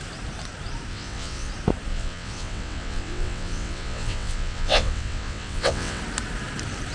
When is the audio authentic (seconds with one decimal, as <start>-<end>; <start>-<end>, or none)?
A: 0.0-0.9; 1.5-1.9; 6.0-6.9